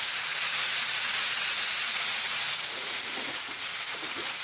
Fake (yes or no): yes